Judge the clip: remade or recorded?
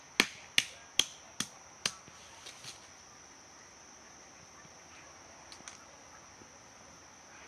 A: recorded